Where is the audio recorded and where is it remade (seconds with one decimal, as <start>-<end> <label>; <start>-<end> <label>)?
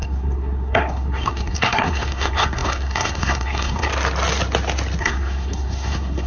0.0-3.9 remade; 3.9-5.0 recorded; 5.0-6.3 remade